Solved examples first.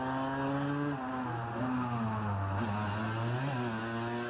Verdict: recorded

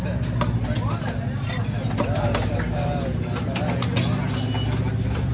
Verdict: recorded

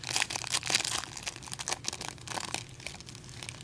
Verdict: recorded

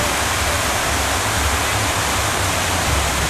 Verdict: recorded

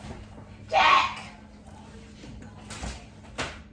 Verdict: recorded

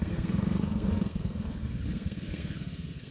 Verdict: remade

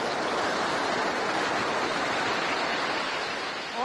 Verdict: recorded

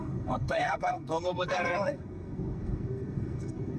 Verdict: remade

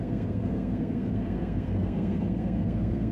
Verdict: remade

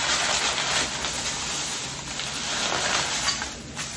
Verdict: recorded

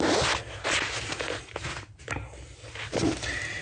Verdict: recorded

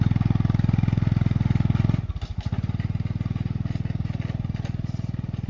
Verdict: recorded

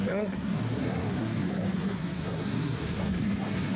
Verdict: remade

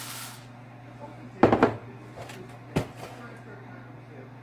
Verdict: recorded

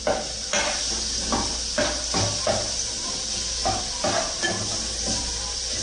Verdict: recorded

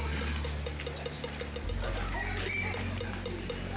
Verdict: recorded